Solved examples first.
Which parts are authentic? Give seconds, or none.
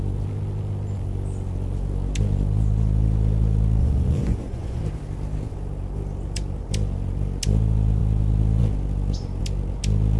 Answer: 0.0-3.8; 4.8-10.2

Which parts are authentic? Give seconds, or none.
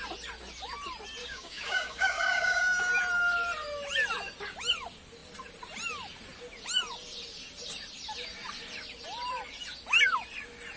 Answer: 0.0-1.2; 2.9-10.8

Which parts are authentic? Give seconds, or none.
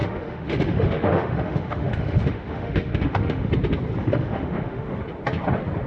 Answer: 3.5-4.0; 5.0-5.9